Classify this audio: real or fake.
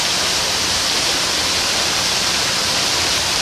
real